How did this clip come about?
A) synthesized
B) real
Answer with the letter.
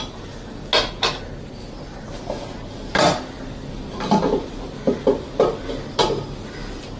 B